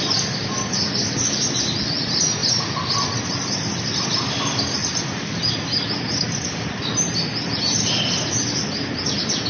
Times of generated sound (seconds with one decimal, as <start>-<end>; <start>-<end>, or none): none